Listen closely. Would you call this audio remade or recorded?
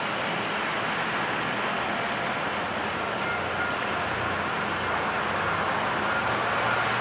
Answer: recorded